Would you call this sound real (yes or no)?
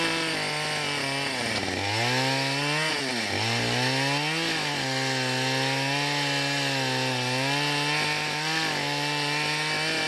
yes